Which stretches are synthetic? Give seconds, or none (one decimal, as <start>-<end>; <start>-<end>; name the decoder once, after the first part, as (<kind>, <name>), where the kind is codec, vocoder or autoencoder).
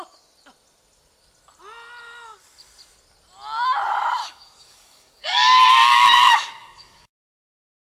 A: 4.2-8.0 (codec, DAC)